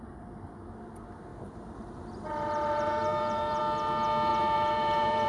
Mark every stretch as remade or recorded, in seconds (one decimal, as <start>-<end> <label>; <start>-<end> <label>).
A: 0.0-1.3 recorded; 1.3-3.6 remade; 3.6-4.3 recorded; 4.3-5.3 remade